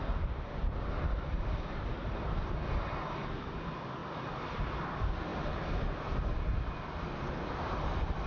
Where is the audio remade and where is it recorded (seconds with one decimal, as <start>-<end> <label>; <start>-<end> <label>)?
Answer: 0.0-8.3 recorded